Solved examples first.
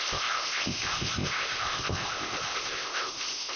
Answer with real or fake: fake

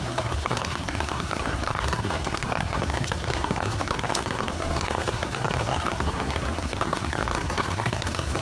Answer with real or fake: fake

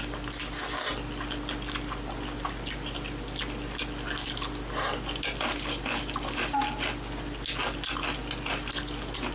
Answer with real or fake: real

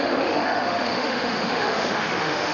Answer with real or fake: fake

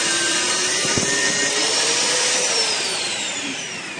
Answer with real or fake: fake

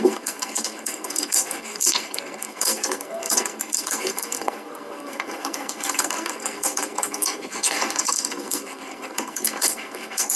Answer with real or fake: fake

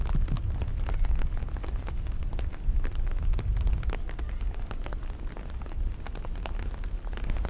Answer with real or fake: real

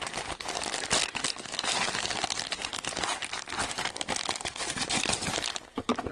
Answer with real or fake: real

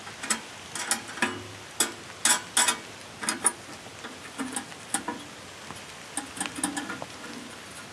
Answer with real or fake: real